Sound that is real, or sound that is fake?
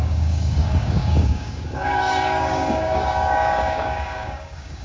fake